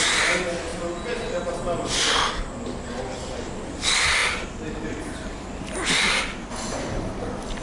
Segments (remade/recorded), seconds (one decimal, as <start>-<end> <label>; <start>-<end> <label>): 0.0-7.6 recorded